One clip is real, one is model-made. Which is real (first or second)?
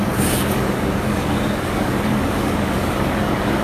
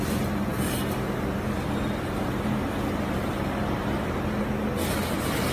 second